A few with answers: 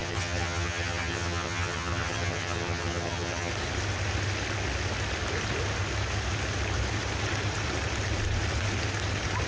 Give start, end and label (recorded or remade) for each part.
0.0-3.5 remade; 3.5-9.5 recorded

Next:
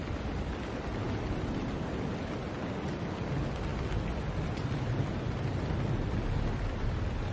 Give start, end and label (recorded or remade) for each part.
0.0-7.3 recorded

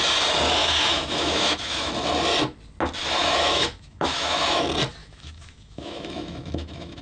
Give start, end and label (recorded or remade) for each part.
0.0-0.6 recorded; 0.6-1.9 remade; 1.9-3.2 recorded; 3.2-4.6 remade; 4.6-5.0 recorded; 5.0-7.0 remade

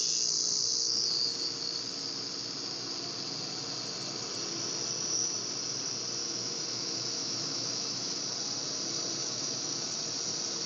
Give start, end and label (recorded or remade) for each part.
0.0-6.2 recorded; 6.2-8.2 remade; 8.2-9.2 recorded; 9.2-9.9 remade; 9.9-10.7 recorded

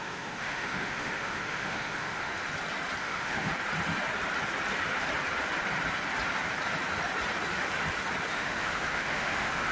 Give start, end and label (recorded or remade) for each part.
0.0-2.3 remade; 2.3-3.0 recorded; 3.0-3.5 remade; 3.5-8.3 recorded; 8.3-9.7 remade